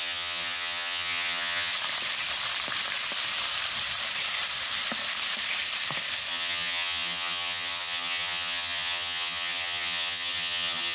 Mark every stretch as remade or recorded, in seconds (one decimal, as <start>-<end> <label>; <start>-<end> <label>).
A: 0.0-1.7 remade; 1.7-6.3 recorded; 6.3-10.9 remade